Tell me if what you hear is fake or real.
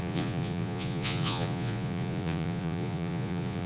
fake